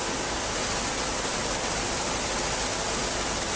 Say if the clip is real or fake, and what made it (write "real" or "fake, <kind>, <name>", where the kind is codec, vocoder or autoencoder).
real